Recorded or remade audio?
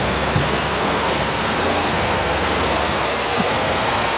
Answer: remade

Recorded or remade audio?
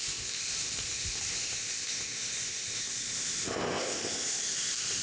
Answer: remade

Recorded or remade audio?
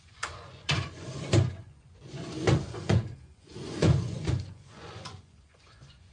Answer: remade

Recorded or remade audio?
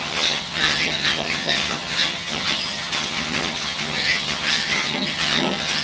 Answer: remade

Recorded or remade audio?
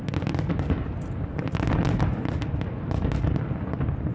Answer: recorded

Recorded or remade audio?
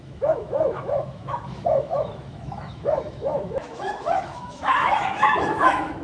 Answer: remade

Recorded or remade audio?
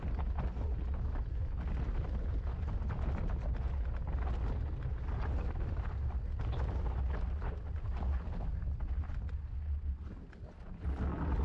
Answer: recorded